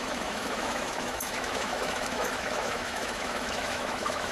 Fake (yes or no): yes